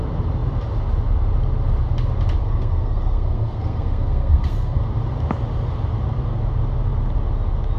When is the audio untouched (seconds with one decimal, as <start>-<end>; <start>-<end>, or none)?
0.0-2.4; 4.8-7.8